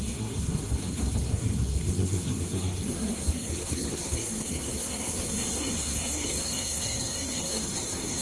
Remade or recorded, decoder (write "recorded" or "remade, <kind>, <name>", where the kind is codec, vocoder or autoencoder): remade, codec, SNAC